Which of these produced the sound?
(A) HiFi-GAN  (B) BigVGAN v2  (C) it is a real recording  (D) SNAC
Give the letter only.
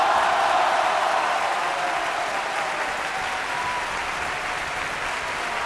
C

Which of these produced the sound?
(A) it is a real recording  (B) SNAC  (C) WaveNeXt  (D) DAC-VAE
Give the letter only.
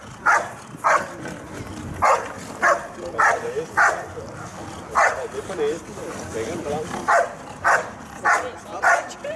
A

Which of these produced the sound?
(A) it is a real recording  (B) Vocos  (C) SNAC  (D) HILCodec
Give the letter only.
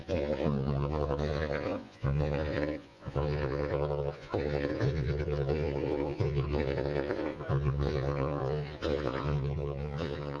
B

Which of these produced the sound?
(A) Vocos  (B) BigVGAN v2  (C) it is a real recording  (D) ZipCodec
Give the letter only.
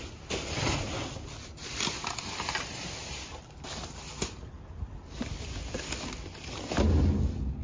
C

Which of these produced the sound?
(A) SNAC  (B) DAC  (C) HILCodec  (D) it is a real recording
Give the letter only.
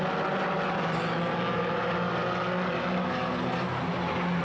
D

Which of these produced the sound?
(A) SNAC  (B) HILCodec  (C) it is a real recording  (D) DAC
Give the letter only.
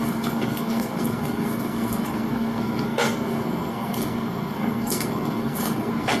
A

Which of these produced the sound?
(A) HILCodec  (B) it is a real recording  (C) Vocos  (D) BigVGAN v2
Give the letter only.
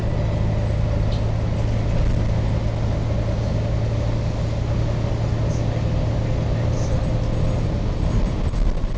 B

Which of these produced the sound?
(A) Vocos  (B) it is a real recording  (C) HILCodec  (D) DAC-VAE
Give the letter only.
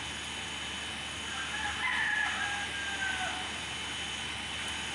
B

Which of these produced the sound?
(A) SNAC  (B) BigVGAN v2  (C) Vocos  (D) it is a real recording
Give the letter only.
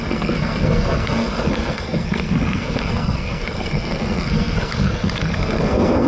A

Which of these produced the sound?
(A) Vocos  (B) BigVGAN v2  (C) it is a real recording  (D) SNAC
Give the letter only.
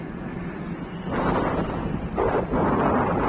C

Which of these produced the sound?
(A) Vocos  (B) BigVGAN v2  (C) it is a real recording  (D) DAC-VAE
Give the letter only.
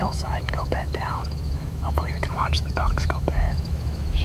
D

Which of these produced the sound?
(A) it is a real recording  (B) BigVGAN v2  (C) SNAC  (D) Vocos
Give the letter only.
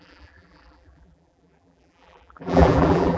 B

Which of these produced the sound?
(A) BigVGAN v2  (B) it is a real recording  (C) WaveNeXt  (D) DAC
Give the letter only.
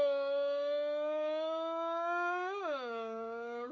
D